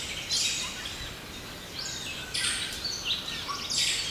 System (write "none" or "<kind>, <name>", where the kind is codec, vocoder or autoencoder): none